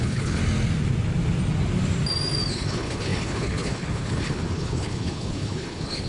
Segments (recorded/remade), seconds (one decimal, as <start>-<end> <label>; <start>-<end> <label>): 0.0-0.4 remade; 0.4-2.5 recorded; 2.5-6.1 remade